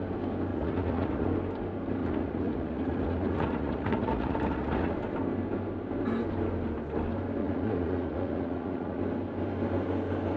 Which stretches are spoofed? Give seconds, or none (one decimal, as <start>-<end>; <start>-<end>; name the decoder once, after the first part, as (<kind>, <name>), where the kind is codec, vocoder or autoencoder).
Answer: 0.5-1.3 (vocoder, Vocos); 2.0-4.9; 7.4-9.0